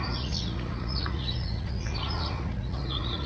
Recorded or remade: remade